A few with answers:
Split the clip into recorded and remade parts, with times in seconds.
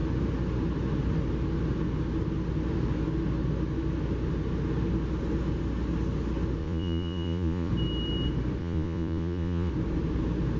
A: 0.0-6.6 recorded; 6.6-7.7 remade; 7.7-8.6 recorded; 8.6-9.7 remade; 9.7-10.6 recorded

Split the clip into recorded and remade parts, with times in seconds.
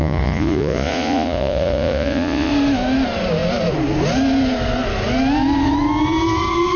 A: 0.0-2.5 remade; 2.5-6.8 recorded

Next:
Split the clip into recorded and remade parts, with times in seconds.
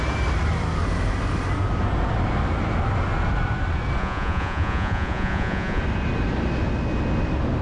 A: 0.0-4.0 recorded; 4.0-5.8 remade; 5.8-7.6 recorded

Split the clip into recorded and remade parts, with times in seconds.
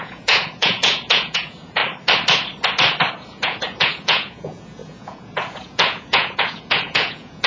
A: 0.0-1.8 remade; 1.8-3.1 recorded; 3.1-7.5 remade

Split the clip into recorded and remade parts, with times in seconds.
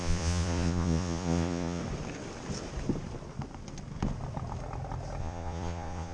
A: 0.0-1.8 remade; 1.8-5.2 recorded; 5.2-6.1 remade